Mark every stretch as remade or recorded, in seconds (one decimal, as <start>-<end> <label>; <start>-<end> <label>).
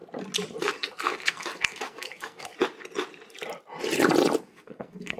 0.0-0.6 recorded; 0.6-2.5 remade; 2.5-4.4 recorded; 4.4-5.2 remade